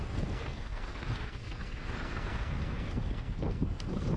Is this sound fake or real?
fake